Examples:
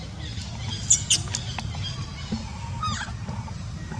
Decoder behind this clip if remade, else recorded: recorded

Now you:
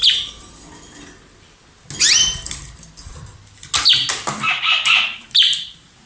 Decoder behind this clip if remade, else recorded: recorded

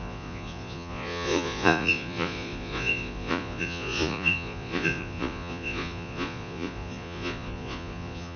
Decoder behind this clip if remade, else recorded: remade, vocoder, Vocos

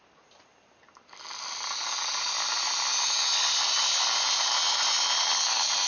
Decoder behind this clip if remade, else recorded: recorded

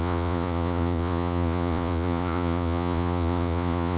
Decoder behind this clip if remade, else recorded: remade, vocoder, Vocos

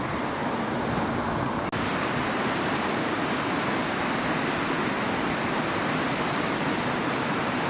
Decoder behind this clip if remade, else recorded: recorded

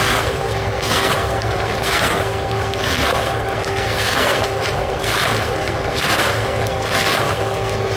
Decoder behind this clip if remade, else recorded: remade, codec, SNAC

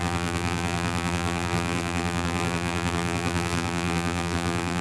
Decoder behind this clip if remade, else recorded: remade, vocoder, BigVGAN v2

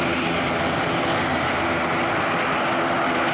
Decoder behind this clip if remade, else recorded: recorded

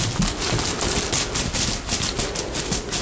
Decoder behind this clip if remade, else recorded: recorded